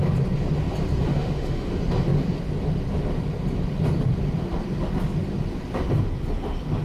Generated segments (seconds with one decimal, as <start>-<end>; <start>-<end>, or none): 1.1-1.7